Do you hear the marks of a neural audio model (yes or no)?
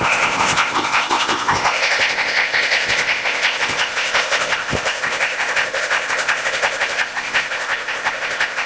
yes